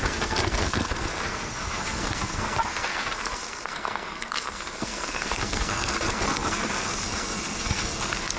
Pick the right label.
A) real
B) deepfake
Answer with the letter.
B